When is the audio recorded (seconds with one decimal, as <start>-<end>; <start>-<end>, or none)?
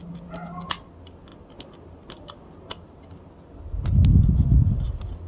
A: 0.0-5.3